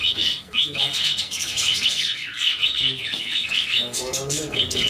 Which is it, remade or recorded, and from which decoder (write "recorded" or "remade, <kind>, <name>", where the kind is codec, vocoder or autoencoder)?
remade, codec, SNAC